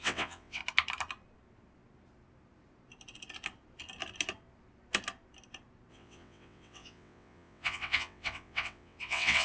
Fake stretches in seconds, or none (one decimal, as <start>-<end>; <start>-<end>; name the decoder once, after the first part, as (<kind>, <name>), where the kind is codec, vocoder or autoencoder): 0.0-0.6 (vocoder, WaveNeXt); 5.9-9.4